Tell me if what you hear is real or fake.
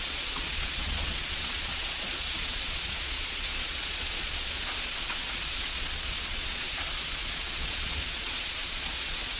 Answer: fake